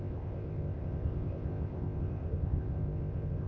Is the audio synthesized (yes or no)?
yes